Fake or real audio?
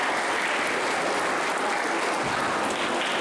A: real